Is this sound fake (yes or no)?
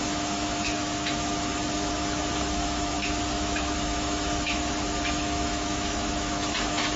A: yes